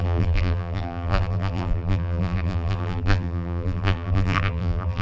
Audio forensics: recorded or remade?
remade